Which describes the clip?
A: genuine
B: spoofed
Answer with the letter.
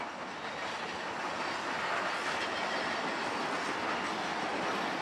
A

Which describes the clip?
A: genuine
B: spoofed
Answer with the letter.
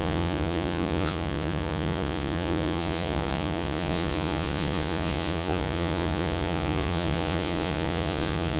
B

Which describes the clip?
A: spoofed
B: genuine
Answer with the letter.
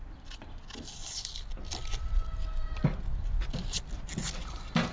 B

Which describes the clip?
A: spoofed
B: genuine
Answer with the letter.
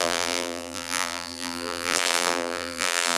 A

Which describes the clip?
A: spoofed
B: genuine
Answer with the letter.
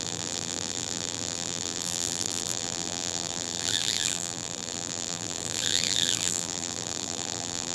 A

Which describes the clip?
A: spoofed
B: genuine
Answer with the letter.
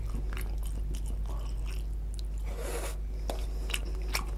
B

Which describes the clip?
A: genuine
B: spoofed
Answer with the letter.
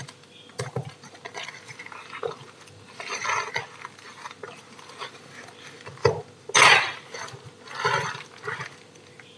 A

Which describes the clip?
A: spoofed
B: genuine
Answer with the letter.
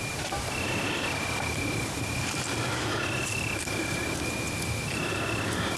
B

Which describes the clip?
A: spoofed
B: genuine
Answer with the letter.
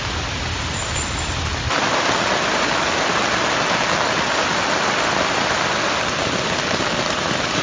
A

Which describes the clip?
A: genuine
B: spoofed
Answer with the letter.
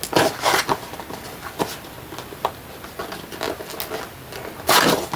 A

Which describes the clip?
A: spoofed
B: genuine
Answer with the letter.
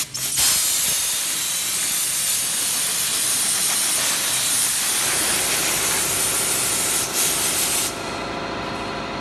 B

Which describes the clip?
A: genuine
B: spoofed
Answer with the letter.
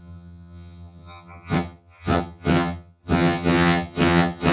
B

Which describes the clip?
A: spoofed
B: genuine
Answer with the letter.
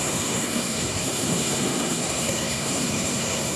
A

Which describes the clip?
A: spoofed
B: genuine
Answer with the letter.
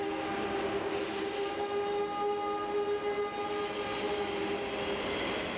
B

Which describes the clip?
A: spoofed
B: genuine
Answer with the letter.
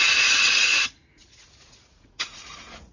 A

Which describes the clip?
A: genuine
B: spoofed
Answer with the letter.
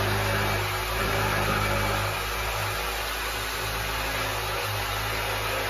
A